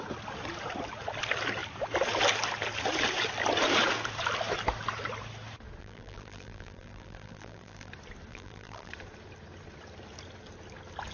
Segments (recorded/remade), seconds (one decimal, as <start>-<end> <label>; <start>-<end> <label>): 0.0-5.8 recorded; 5.8-7.9 remade; 7.9-8.3 recorded; 8.3-8.9 remade; 8.9-11.1 recorded